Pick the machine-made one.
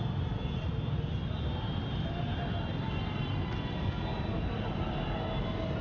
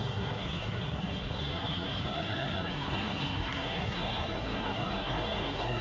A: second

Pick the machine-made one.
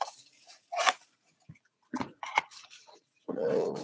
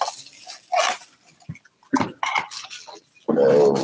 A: first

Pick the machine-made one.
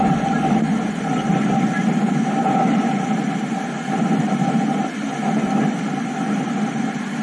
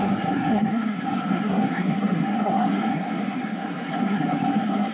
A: second